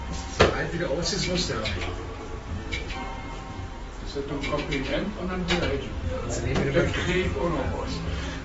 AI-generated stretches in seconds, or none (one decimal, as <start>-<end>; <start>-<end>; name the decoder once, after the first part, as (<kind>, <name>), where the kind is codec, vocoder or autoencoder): 1.2-3.7 (vocoder, BigVGAN v2); 4.9-5.5; 6.0-7.5

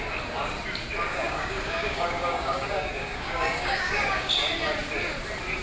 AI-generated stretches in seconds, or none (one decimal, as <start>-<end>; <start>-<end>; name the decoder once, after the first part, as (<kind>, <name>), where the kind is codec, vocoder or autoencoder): 1.1-4.3 (codec, DAC)

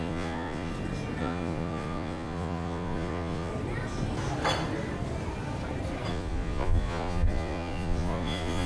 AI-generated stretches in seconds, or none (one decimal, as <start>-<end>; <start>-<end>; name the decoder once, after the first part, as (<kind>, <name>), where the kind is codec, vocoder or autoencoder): 0.0-0.7 (vocoder, Vocos); 1.2-3.5; 6.1-8.7